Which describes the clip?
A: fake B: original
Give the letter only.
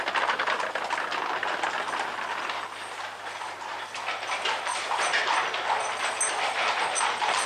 B